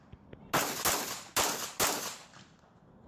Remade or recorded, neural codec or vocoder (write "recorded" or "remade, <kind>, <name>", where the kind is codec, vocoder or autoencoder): recorded